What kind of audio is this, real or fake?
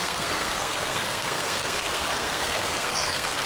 fake